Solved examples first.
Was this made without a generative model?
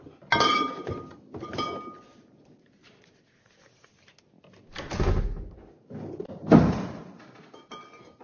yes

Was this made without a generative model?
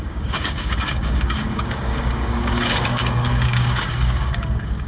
no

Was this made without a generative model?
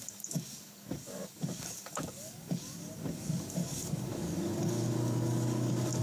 no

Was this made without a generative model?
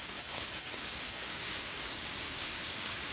no